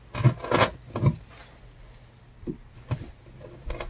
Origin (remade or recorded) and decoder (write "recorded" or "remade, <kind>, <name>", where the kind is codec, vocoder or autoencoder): recorded